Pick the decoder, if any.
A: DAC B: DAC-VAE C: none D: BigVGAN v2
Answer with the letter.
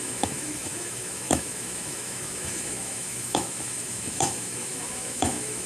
B